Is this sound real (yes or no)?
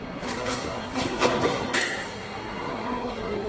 no